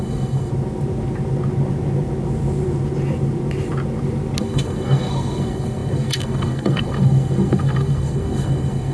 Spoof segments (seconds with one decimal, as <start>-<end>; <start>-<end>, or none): 0.0-0.5; 4.4-8.9